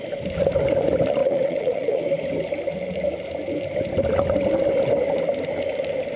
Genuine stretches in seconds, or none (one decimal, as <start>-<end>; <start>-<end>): 0.0-1.2; 2.0-6.2

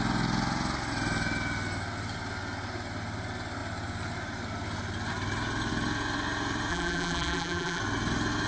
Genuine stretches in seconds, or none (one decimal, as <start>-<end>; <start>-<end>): 0.0-6.7; 7.8-8.5